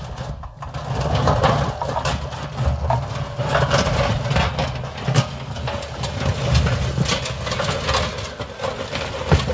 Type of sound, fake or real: real